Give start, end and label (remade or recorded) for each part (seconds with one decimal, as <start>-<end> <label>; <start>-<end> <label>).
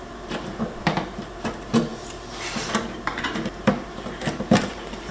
0.0-5.1 remade